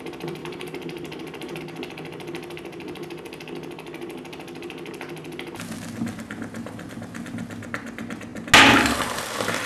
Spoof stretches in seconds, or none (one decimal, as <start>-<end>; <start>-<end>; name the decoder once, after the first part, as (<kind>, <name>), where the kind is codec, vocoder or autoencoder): 0.4-1.6 (vocoder, BigVGAN v2)

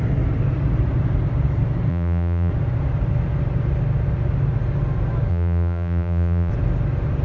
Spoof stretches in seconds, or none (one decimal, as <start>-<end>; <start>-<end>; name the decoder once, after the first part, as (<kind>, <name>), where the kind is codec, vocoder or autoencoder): 1.9-2.5 (vocoder, BigVGAN v2); 5.3-6.5